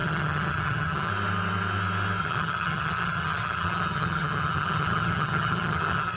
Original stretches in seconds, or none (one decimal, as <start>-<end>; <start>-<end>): 1.1-2.2